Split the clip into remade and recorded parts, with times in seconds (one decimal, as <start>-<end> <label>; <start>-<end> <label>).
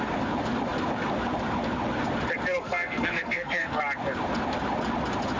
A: 0.0-2.6 recorded; 2.6-3.8 remade; 3.8-5.4 recorded